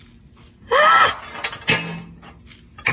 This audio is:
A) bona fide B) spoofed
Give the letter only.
A